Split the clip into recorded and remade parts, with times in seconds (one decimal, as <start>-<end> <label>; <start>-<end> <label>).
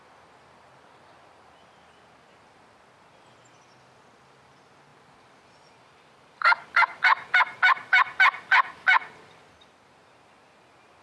0.0-4.9 recorded; 4.9-8.2 remade; 8.2-8.9 recorded; 8.9-9.9 remade; 9.9-11.0 recorded